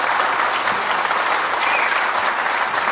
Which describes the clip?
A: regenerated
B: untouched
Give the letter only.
B